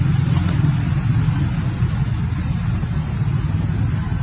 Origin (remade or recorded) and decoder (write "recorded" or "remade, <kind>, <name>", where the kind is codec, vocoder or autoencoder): recorded